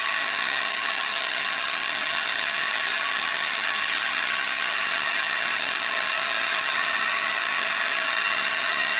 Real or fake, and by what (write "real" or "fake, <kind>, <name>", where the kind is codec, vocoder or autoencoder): fake, vocoder, HiFi-GAN